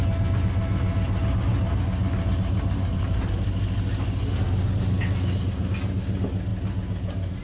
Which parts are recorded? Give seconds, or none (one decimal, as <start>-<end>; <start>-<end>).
0.0-7.4